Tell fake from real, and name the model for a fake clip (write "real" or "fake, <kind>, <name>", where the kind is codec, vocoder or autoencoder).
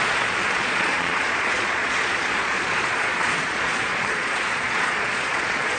fake, vocoder, Vocos